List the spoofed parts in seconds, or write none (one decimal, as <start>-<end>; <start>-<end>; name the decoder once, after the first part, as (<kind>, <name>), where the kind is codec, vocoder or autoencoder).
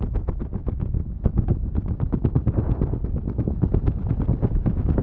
none